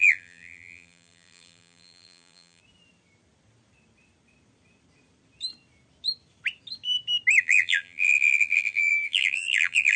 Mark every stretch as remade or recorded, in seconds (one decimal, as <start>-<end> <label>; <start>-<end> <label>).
0.0-2.6 remade; 2.6-7.4 recorded; 7.4-10.0 remade